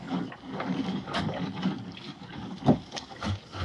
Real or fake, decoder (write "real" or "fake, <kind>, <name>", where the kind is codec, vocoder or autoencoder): fake, codec, DAC